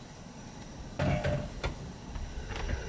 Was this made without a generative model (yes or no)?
yes